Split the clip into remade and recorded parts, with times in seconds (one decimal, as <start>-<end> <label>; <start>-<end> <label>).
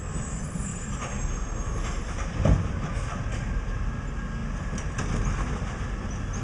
0.0-0.7 recorded; 0.7-2.7 remade; 2.7-4.4 recorded; 4.4-5.0 remade; 5.0-6.4 recorded